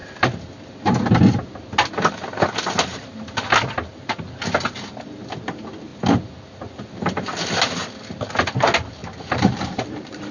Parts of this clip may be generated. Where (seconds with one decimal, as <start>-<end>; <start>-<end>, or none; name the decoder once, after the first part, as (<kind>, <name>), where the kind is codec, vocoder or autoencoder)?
9.0-10.3 (vocoder, BigVGAN v2)